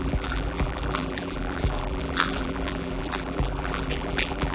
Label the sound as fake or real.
fake